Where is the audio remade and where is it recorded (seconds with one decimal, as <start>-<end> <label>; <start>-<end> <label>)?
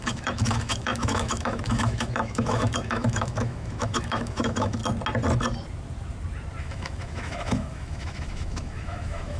0.0-4.8 remade; 4.8-6.6 recorded; 6.6-9.4 remade